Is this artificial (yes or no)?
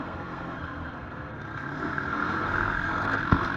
yes